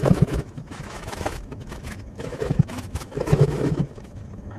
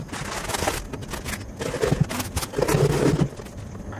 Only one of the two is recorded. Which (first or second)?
second